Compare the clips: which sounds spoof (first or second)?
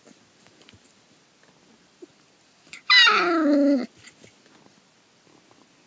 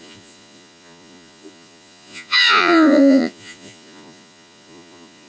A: second